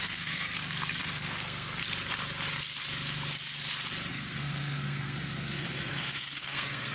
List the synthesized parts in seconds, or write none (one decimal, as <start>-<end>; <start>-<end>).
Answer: 0.0-1.8; 4.1-6.9